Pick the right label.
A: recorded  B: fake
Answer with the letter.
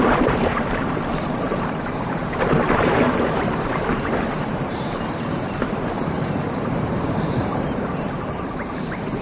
B